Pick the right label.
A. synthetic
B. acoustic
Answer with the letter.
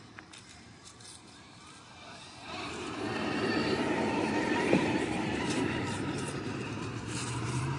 A